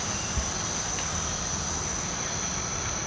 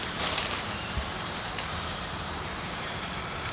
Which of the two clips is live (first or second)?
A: first